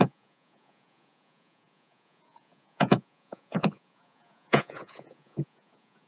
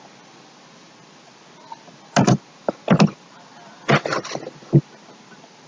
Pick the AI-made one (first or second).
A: first